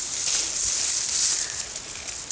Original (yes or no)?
yes